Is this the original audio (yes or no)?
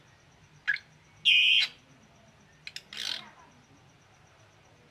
yes